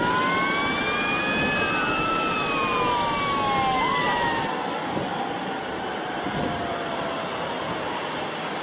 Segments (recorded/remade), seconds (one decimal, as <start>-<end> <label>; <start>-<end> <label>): 0.0-5.1 recorded; 5.1-7.7 remade; 7.7-8.6 recorded